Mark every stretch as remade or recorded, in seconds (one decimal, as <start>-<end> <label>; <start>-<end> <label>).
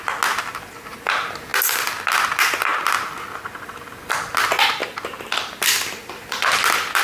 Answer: 0.0-2.7 recorded; 2.7-3.3 remade; 3.3-4.8 recorded; 4.8-7.0 remade